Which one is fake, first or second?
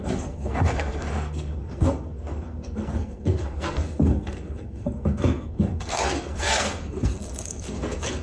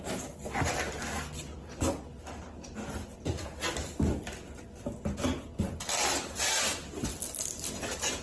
first